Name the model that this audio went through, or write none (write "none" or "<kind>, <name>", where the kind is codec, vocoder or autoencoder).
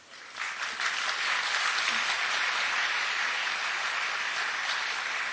none